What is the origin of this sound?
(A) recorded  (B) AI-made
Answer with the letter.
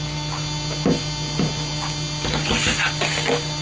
A